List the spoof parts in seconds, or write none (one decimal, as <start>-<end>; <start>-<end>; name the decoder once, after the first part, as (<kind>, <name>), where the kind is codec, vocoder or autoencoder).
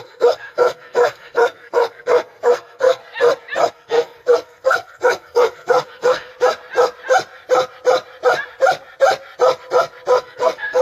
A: 0.0-3.0 (codec, SNAC); 3.7-6.3; 10.2-10.8